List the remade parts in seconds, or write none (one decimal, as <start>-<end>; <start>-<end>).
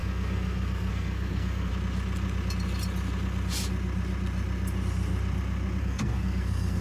0.0-1.7; 5.8-6.8